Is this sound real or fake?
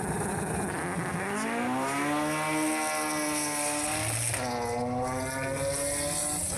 real